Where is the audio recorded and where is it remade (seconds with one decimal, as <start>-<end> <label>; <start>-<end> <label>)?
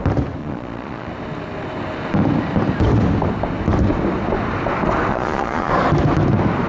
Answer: 0.0-0.4 recorded; 0.4-1.1 remade; 1.1-5.1 recorded; 5.1-5.7 remade; 5.7-6.7 recorded